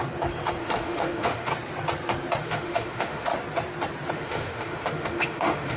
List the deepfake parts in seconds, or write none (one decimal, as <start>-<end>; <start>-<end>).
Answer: 0.6-1.5; 2.4-3.3; 4.1-5.8